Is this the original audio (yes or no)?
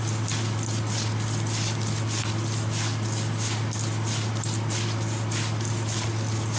yes